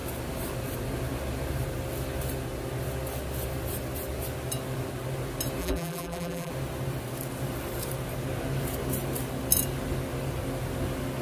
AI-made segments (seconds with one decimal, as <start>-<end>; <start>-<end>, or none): 5.6-6.5